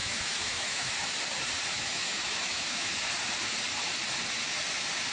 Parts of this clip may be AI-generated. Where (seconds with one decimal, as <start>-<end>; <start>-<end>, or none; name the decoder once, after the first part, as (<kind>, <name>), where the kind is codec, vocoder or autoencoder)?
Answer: 0.0-0.9 (autoencoder, DAC-VAE); 1.7-3.0